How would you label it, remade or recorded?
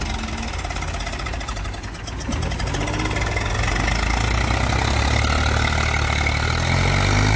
recorded